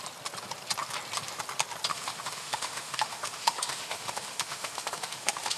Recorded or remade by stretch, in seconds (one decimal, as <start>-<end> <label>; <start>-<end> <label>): 0.0-1.9 recorded; 1.9-5.6 remade